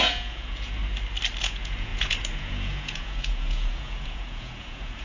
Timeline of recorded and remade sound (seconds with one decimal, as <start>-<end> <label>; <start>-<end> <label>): 0.0-0.8 remade; 0.8-1.4 recorded; 1.4-5.0 remade